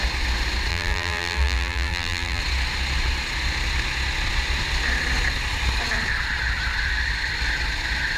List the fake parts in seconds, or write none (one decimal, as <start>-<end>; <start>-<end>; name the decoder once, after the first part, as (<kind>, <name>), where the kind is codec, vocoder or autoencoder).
0.7-2.4 (vocoder, BigVGAN v2)